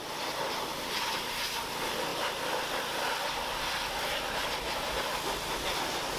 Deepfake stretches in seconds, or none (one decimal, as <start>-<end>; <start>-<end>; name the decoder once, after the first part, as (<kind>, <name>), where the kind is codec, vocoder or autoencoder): none